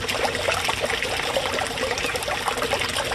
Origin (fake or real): real